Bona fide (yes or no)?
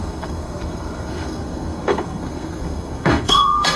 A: no